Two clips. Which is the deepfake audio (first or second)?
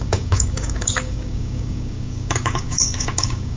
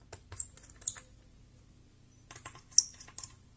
first